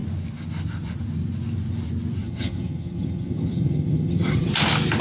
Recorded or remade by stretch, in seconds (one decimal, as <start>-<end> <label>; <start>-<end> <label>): 0.0-2.2 recorded; 2.2-4.5 remade; 4.5-5.0 recorded